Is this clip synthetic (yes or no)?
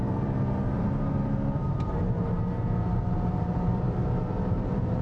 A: yes